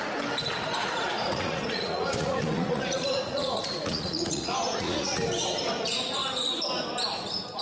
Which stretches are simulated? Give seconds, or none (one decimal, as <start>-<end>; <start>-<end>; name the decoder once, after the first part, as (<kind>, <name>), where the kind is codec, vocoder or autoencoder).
0.8-5.2 (vocoder, Vocos)